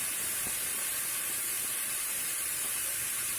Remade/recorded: remade